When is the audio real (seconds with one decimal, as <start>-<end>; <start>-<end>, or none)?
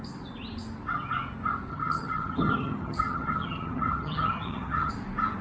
0.0-1.7; 4.9-5.4